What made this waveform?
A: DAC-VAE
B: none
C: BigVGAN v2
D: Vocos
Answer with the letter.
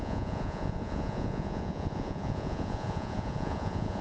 D